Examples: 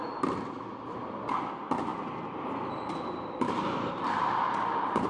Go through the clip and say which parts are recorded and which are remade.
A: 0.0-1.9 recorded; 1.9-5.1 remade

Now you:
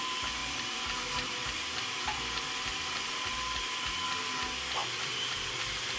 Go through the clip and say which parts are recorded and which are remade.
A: 0.0-0.4 recorded; 0.4-4.0 remade; 4.0-4.8 recorded; 4.8-5.6 remade; 5.6-6.0 recorded

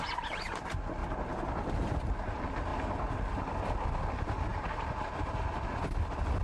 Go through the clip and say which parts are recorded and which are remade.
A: 0.0-4.5 recorded; 4.5-5.1 remade; 5.1-6.4 recorded

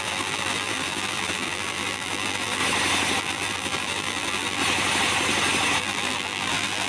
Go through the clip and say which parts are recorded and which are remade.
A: 0.0-2.6 remade; 2.6-3.2 recorded; 3.2-4.6 remade; 4.6-5.8 recorded; 5.8-6.9 remade

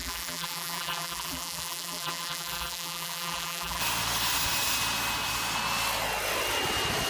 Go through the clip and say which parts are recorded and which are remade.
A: 0.0-3.8 remade; 3.8-7.1 recorded

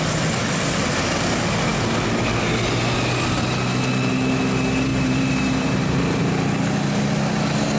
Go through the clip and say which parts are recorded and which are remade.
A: 0.0-4.9 recorded; 4.9-6.0 remade; 6.0-7.8 recorded

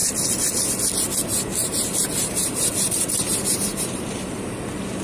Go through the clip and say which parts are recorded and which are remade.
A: 0.0-1.6 recorded; 1.6-4.6 remade; 4.6-5.0 recorded

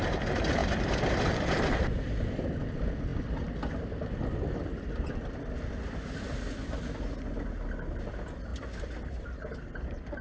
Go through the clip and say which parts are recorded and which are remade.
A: 0.0-0.6 recorded; 0.6-2.1 remade; 2.1-10.2 recorded